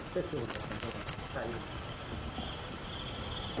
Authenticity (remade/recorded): recorded